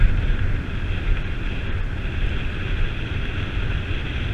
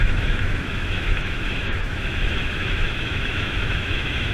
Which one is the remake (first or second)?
second